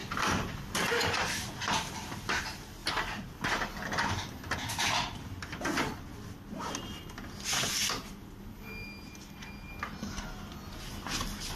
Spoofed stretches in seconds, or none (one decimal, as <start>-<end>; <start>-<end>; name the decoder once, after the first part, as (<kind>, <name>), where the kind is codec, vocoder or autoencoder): 0.0-2.4 (vocoder, BigVGAN v2)